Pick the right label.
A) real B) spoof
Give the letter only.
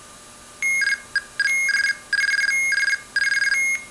A